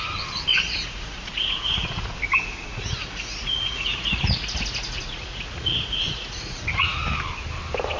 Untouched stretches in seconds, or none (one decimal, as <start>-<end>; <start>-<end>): 0.0-0.5; 2.1-2.7; 7.0-8.0